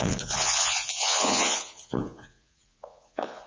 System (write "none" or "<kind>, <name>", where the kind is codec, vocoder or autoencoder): vocoder, Vocos